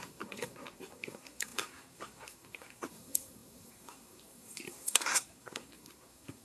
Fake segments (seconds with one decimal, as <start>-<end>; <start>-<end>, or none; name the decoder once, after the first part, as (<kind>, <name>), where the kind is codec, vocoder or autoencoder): 0.0-6.4 (codec, SNAC)